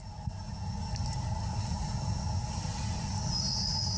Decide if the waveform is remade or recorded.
recorded